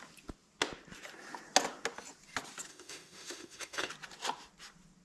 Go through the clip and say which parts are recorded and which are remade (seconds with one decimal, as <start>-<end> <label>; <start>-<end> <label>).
0.0-2.7 recorded; 2.7-3.9 remade; 3.9-5.0 recorded